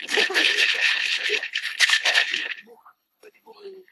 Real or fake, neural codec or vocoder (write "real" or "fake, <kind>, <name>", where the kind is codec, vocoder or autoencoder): fake, codec, HILCodec